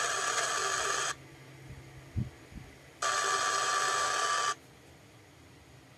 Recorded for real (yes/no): yes